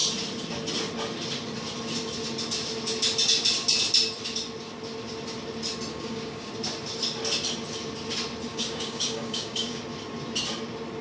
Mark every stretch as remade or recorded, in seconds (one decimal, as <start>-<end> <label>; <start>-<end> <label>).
0.0-5.9 recorded; 5.9-6.5 remade; 6.5-8.5 recorded; 8.5-9.8 remade; 9.8-11.0 recorded